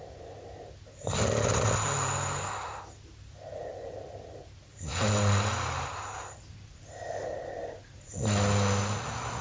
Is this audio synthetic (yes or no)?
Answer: no